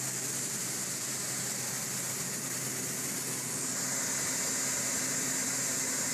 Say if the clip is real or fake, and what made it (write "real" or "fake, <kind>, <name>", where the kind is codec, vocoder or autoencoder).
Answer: real